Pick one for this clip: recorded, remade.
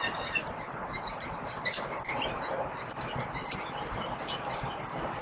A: recorded